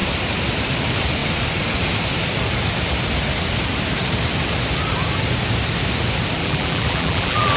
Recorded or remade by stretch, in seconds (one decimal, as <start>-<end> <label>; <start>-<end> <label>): 0.0-6.4 recorded; 6.4-7.6 remade